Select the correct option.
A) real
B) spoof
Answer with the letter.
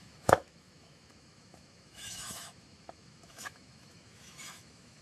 B